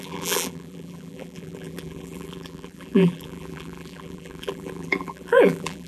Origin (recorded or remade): remade